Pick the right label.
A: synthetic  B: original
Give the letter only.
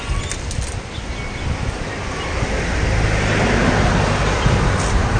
B